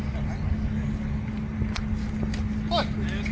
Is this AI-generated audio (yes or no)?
no